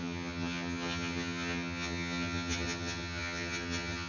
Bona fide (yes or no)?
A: no